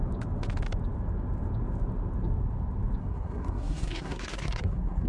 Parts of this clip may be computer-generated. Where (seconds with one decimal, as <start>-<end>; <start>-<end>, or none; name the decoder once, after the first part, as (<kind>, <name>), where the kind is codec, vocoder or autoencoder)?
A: 3.0-5.1 (codec, SNAC)